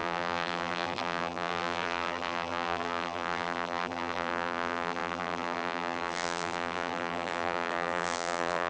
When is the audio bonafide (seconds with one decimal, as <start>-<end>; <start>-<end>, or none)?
none